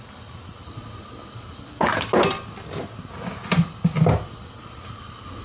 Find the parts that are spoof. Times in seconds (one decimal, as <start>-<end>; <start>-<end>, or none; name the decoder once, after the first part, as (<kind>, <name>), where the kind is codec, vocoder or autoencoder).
0.0-1.9 (vocoder, BigVGAN v2)